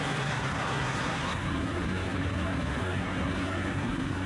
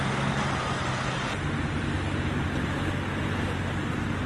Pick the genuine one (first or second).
second